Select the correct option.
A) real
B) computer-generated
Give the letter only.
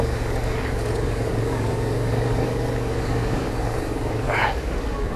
B